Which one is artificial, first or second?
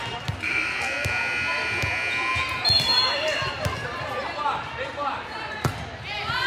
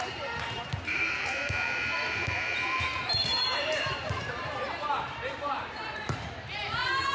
second